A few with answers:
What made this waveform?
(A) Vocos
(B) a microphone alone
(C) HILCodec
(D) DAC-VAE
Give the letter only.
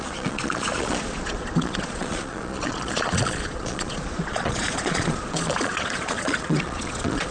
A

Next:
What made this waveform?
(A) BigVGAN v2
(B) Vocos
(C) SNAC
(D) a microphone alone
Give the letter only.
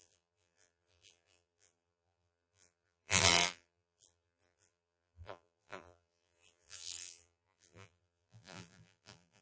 A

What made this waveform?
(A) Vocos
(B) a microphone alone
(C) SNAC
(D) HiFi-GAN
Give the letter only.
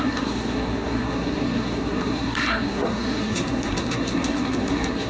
C